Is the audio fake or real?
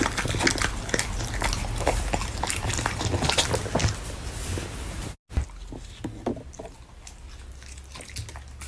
real